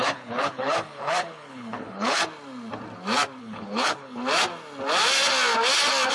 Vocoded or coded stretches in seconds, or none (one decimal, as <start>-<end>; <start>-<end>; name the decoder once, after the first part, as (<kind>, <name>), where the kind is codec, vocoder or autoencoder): 0.0-2.2 (codec, HILCodec); 3.4-4.2